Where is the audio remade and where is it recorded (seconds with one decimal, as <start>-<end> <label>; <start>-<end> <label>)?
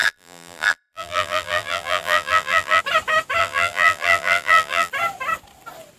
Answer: 0.0-2.8 remade; 2.8-3.4 recorded; 3.4-4.9 remade; 4.9-6.0 recorded